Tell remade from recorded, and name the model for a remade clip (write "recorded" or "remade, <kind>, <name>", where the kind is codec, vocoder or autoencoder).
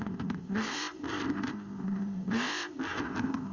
remade, codec, ZipCodec